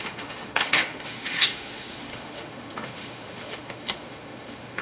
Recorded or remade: remade